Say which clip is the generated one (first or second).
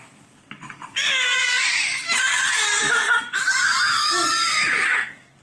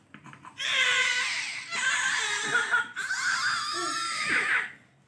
first